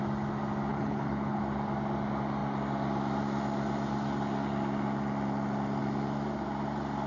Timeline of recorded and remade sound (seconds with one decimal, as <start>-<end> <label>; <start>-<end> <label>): 0.0-0.7 recorded; 0.7-1.4 remade; 1.4-7.1 recorded